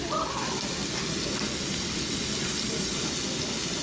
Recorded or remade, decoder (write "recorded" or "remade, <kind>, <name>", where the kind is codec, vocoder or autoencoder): recorded